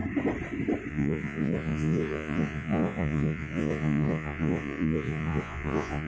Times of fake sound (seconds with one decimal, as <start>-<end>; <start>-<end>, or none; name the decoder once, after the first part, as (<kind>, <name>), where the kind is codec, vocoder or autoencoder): 0.9-6.1 (vocoder, Vocos)